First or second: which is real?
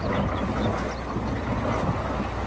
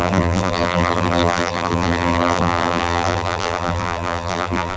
first